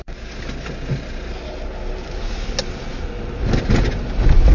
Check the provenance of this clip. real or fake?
real